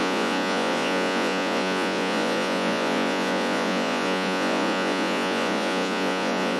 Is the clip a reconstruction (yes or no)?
yes